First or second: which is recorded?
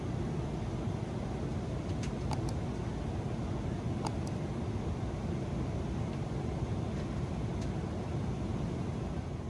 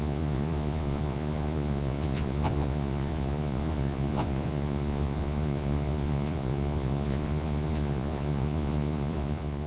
first